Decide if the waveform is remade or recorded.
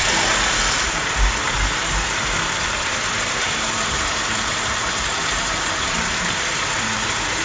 remade